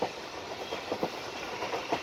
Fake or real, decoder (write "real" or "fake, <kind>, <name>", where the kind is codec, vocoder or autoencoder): fake, vocoder, BigVGAN v2